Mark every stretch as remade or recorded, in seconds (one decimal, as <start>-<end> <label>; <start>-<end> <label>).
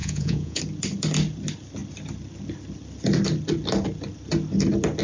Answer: 0.0-0.6 remade; 0.6-5.0 recorded